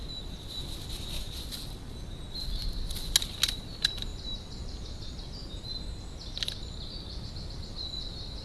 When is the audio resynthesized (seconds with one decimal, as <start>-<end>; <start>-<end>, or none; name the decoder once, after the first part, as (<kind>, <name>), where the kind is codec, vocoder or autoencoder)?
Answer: none